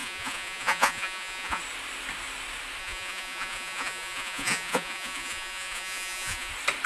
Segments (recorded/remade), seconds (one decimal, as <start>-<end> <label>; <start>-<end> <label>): 0.0-1.6 remade; 1.6-2.8 recorded; 2.8-6.5 remade; 6.5-6.9 recorded